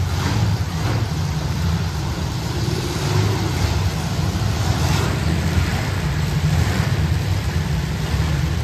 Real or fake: fake